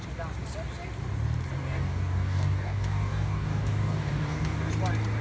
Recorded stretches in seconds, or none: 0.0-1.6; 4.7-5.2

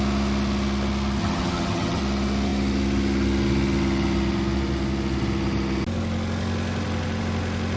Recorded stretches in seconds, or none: 0.0-1.2; 2.0-7.8

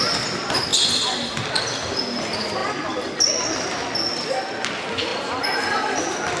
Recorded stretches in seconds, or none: 0.0-6.4

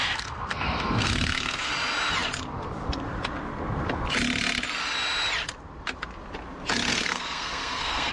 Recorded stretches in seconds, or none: 1.7-6.9